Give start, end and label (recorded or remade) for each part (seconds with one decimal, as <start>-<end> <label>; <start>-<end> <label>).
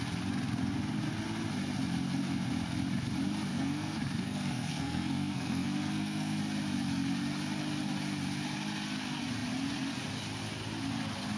0.0-3.5 recorded; 3.5-6.4 remade; 6.4-11.4 recorded